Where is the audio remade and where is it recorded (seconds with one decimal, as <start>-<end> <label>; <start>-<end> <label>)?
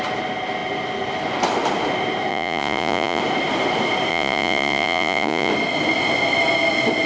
0.0-2.3 recorded; 2.3-3.2 remade; 3.2-4.1 recorded; 4.1-5.5 remade; 5.5-7.1 recorded